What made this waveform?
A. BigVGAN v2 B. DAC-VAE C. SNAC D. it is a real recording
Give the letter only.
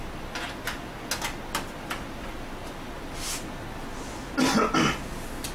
D